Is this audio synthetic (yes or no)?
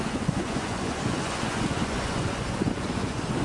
yes